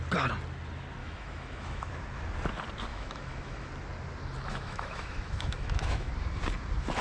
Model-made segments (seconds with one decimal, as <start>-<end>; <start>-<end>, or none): 1.0-1.9; 2.9-3.7; 4.5-6.1